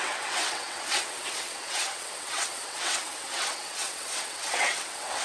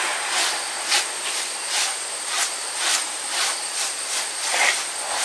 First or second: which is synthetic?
first